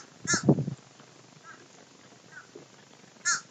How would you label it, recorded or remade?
recorded